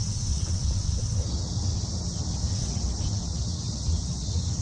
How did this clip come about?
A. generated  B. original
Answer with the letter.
A